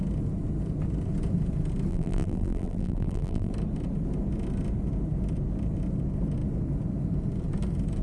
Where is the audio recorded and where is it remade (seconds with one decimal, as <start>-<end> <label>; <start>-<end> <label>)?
0.0-1.9 recorded; 1.9-3.5 remade; 3.5-8.0 recorded